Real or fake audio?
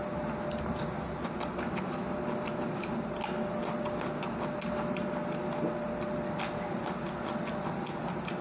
real